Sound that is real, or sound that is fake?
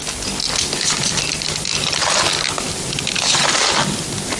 real